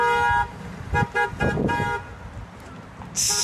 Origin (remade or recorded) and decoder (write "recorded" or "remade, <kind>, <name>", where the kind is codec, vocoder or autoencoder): recorded